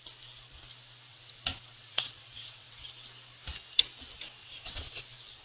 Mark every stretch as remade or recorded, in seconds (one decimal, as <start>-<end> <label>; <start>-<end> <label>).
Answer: 0.0-1.1 recorded; 1.1-2.9 remade; 2.9-4.4 recorded; 4.4-5.0 remade; 5.0-5.4 recorded